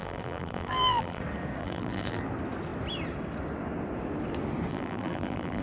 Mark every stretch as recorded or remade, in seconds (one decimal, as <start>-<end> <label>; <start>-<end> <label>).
0.0-1.2 remade; 1.2-1.6 recorded; 1.6-2.2 remade; 2.2-4.7 recorded; 4.7-5.6 remade